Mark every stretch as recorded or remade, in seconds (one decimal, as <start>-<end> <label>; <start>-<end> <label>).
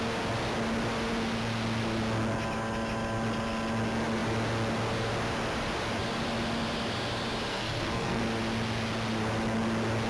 0.0-7.5 recorded; 7.5-8.2 remade; 8.2-10.1 recorded